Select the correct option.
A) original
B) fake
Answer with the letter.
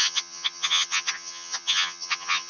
B